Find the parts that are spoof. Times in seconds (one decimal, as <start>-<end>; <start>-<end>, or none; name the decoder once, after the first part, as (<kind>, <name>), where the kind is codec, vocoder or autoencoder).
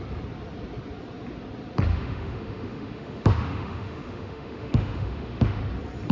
1.9-5.6 (autoencoder, DAC-VAE)